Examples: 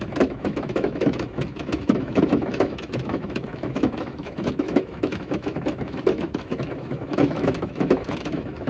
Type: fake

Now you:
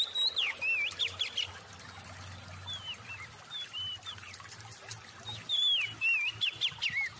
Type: real